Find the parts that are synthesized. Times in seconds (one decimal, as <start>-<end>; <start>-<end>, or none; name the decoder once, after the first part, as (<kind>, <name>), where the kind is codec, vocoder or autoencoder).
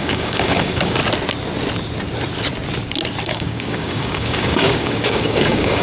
0.0-1.0 (codec, DAC); 3.3-5.8